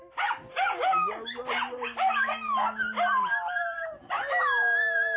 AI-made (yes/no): no